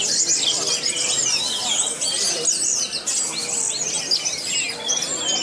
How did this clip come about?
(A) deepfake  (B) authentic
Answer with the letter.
B